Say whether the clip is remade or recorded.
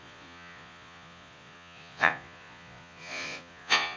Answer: remade